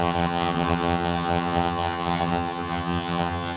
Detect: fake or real fake